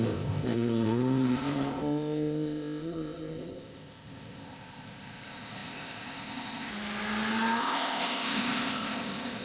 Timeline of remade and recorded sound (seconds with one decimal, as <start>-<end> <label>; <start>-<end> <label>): 0.0-6.7 remade; 6.7-7.6 recorded; 7.6-9.4 remade